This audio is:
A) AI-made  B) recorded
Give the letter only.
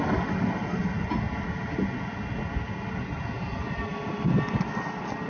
B